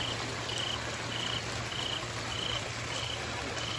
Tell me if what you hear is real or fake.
real